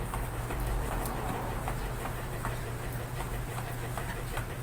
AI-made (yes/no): yes